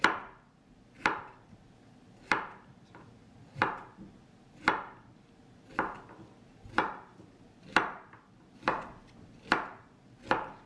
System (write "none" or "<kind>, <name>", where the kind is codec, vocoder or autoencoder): none